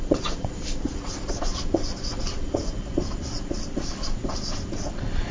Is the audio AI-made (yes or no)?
yes